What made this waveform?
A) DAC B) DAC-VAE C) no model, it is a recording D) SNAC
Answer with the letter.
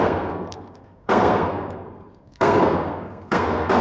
D